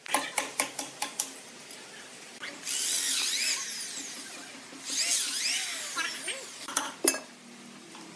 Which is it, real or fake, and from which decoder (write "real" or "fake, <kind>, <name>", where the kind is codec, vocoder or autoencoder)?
real